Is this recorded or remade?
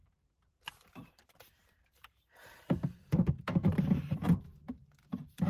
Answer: remade